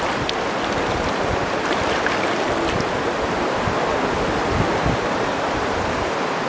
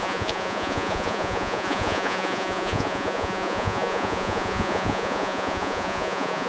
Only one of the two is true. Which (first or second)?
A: first